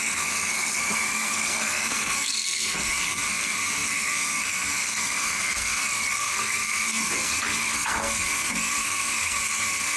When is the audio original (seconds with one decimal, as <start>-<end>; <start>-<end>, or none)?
none